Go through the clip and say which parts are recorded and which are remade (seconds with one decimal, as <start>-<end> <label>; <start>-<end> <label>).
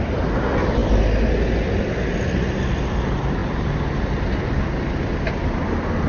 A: 0.0-6.1 recorded